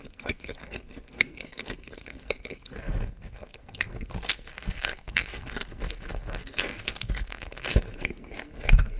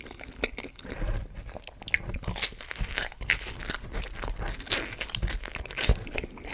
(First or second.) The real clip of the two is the second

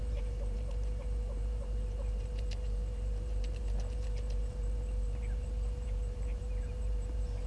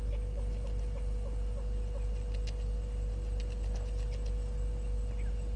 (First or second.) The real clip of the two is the second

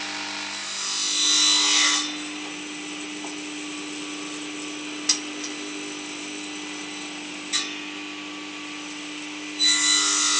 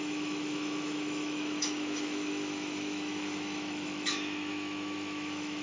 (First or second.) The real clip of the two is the first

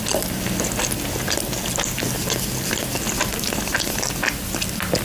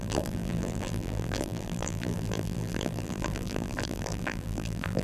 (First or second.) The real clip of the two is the first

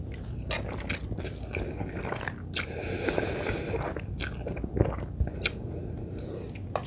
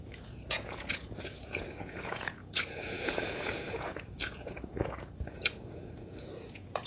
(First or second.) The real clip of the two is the first